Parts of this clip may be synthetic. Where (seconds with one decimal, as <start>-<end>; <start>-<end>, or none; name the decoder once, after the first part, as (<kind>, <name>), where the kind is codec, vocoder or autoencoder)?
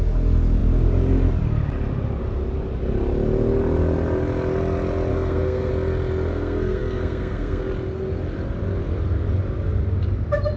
5.1-5.7 (codec, SNAC); 6.3-7.6